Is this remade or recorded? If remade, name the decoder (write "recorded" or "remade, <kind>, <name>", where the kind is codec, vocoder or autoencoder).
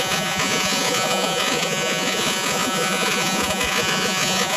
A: remade, vocoder, Vocos